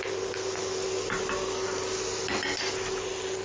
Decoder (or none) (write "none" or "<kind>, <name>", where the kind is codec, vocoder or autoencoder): none